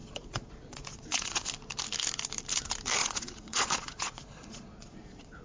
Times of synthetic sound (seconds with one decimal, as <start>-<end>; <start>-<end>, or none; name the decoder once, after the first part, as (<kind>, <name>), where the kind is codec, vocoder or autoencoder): 0.0-1.5 (vocoder, Vocos); 3.0-5.4